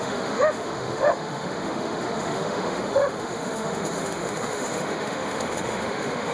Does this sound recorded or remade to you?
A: remade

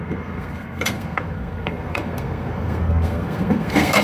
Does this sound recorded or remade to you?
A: remade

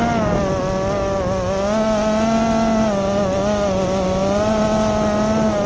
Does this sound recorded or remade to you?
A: recorded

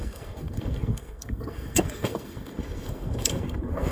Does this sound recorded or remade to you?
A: remade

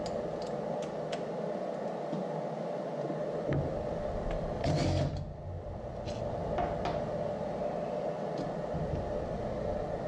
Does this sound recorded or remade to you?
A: recorded